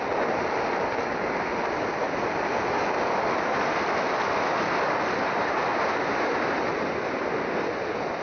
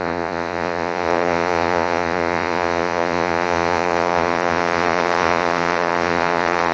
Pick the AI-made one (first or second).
second